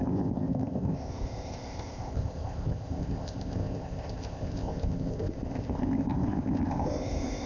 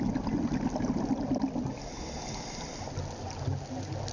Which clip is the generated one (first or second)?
first